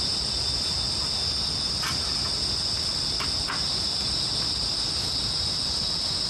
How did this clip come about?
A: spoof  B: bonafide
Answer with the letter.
B